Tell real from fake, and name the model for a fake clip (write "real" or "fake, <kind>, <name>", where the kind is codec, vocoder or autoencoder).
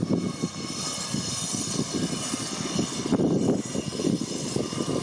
real